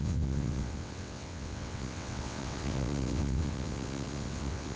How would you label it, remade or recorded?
remade